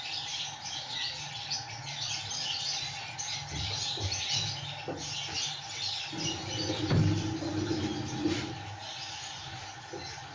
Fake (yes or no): no